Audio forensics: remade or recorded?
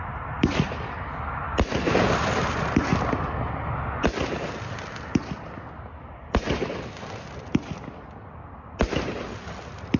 recorded